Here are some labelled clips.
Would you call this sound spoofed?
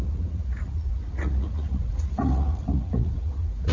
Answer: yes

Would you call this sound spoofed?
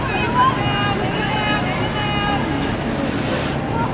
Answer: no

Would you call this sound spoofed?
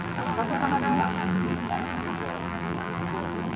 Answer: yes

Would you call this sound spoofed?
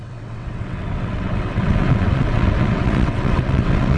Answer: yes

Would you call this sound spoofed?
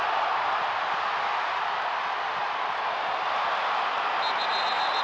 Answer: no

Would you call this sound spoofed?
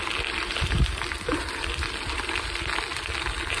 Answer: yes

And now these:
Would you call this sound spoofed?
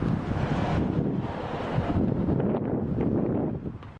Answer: no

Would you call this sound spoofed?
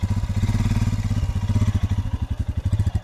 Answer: no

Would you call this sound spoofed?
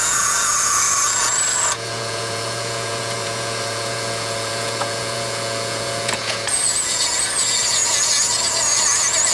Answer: yes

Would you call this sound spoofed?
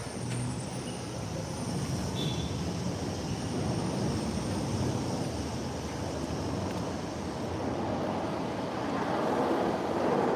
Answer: no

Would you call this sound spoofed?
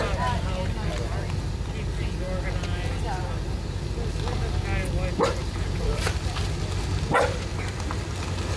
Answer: no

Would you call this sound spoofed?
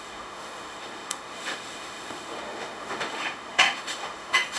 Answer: yes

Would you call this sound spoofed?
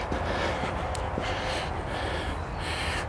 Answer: no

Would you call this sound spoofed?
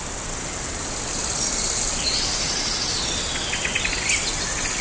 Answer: no